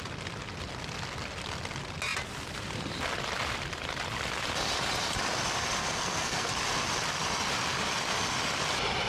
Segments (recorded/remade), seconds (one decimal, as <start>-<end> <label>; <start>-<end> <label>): 0.0-5.8 recorded; 5.8-6.5 remade; 6.5-9.1 recorded